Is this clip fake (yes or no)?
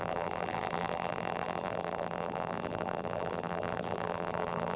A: yes